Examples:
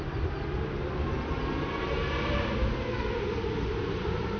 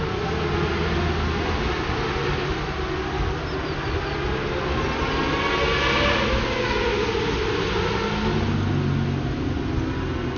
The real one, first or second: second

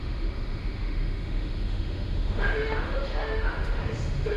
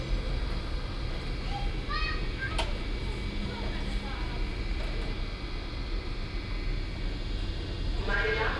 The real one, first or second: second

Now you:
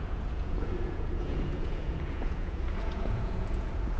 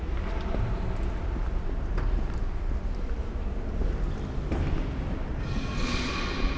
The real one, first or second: second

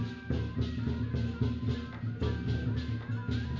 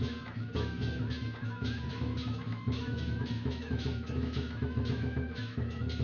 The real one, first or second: first